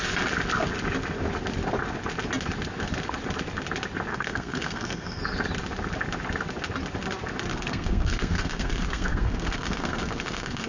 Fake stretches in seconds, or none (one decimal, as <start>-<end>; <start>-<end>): 4.1-5.2; 7.5-10.7